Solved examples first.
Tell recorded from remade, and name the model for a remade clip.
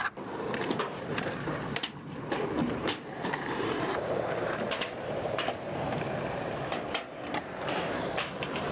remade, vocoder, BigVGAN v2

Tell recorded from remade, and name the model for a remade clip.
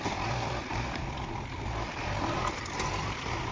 remade, vocoder, BigVGAN v2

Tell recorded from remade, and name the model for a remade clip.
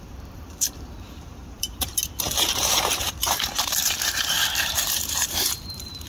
remade, vocoder, BigVGAN v2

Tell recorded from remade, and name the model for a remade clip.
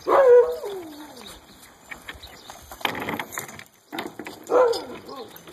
recorded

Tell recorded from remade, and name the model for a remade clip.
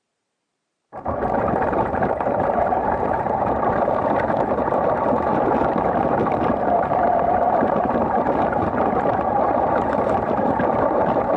remade, vocoder, BigVGAN v2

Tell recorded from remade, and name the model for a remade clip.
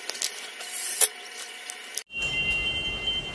recorded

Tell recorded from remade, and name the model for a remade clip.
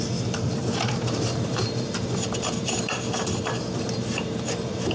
remade, vocoder, BigVGAN v2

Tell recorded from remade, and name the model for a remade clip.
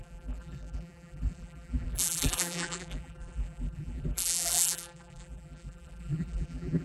remade, vocoder, BigVGAN v2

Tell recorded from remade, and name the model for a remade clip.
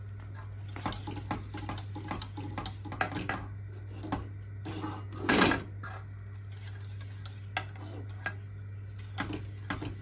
recorded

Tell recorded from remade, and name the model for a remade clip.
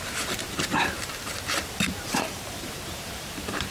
remade, vocoder, BigVGAN v2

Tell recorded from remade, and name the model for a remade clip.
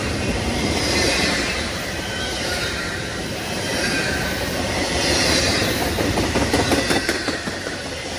remade, vocoder, BigVGAN v2